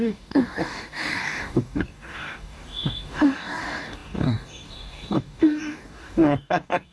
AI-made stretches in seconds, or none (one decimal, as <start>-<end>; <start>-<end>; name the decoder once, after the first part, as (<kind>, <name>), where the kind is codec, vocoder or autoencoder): 0.0-6.9 (codec, DAC)